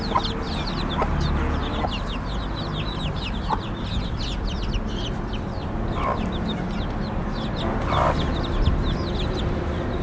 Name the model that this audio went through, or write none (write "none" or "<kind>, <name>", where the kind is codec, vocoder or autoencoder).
none